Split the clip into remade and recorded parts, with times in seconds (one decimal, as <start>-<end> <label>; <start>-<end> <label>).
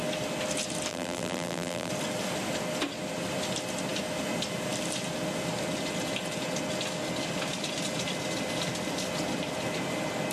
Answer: 0.0-0.9 recorded; 0.9-1.9 remade; 1.9-10.3 recorded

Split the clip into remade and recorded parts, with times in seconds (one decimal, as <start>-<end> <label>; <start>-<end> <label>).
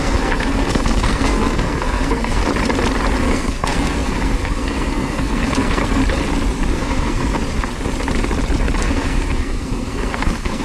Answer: 0.0-2.4 remade; 2.4-3.2 recorded; 3.2-6.0 remade; 6.0-6.7 recorded; 6.7-7.4 remade; 7.4-8.8 recorded; 8.8-10.6 remade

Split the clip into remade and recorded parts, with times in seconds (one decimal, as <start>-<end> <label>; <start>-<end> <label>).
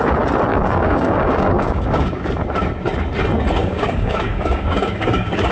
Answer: 0.0-0.5 recorded; 0.5-2.3 remade; 2.3-3.6 recorded; 3.6-5.5 remade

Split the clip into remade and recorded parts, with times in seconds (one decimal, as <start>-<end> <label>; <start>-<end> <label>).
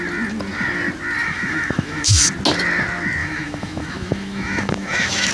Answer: 0.0-1.2 recorded; 1.2-2.3 remade; 2.3-3.2 recorded; 3.2-5.3 remade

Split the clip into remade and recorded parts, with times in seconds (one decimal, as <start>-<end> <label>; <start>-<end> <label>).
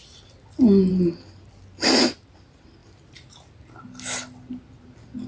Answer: 0.0-5.3 recorded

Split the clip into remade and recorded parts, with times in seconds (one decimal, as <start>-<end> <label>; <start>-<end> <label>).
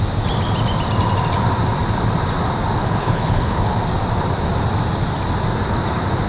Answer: 0.0-2.8 recorded; 2.8-3.7 remade; 3.7-6.3 recorded